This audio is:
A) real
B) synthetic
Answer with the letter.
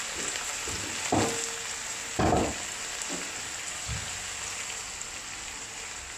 A